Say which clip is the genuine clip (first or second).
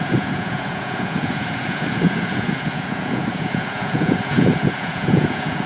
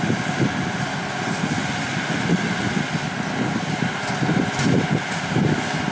second